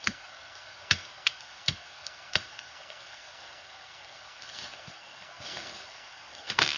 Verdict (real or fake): fake